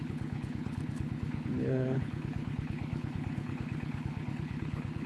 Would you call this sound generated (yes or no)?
yes